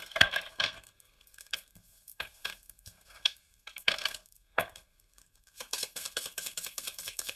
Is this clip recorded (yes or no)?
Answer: no